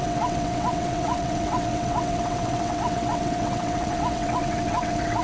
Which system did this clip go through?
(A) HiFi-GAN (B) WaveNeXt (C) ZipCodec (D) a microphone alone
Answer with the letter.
B